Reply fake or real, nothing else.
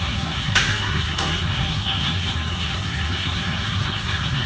fake